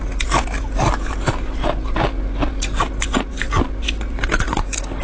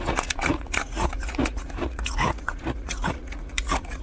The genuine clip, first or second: first